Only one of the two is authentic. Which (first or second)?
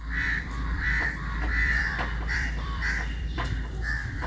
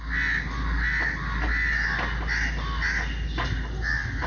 second